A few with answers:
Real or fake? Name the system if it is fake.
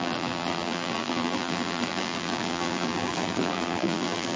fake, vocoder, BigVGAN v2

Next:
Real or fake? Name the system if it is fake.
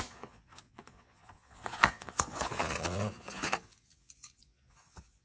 fake, vocoder, Vocos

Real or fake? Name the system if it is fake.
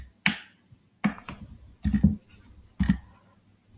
real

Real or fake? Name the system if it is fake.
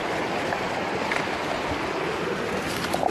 real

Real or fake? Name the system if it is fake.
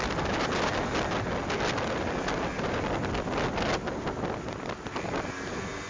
real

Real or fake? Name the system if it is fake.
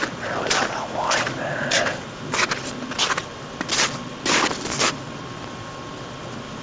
real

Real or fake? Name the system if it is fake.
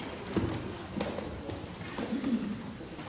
real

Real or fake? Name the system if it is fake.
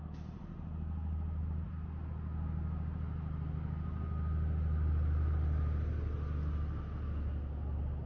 real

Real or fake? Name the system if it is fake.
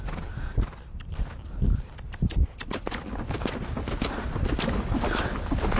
real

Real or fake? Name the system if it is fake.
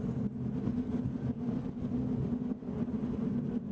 real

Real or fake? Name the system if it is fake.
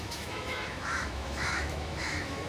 fake, autoencoder, DAC-VAE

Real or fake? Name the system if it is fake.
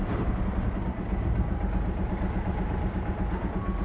real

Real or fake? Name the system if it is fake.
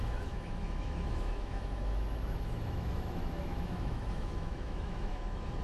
fake, autoencoder, DAC-VAE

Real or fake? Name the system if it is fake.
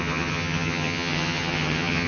fake, vocoder, HiFi-GAN